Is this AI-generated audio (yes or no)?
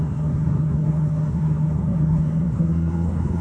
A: yes